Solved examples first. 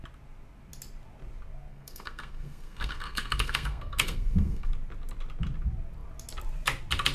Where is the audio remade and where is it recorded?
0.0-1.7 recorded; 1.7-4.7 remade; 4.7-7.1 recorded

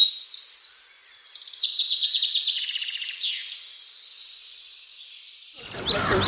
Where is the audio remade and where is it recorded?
0.0-1.7 recorded; 1.7-2.2 remade; 2.2-4.2 recorded; 4.2-5.7 remade; 5.7-6.3 recorded

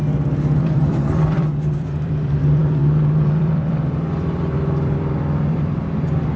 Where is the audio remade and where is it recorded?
0.0-0.6 recorded; 0.6-6.4 remade

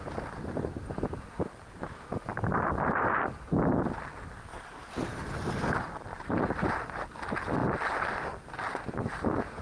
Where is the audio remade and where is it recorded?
0.0-4.5 recorded; 4.5-5.5 remade; 5.5-6.1 recorded; 6.1-6.7 remade; 6.7-9.6 recorded

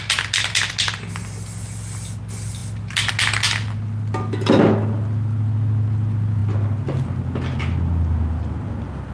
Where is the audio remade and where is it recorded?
0.0-9.1 recorded